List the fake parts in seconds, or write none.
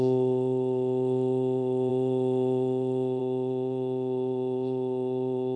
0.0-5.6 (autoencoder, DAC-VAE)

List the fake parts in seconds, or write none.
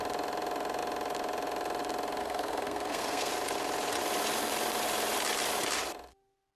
2.2-3.3 (codec, SNAC)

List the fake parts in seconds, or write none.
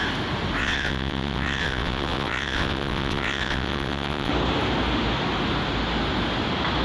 0.6-4.3 (vocoder, WaveNeXt)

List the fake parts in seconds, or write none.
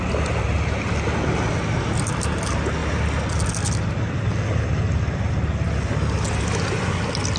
none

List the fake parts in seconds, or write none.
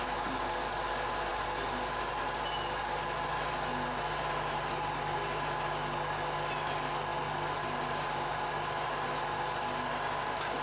none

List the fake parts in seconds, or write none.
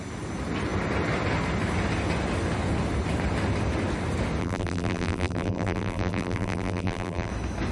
4.4-7.3 (vocoder, BigVGAN v2)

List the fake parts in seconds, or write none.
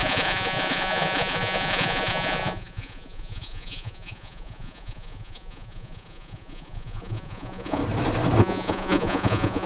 0.0-7.8 (vocoder, Vocos); 8.4-9.7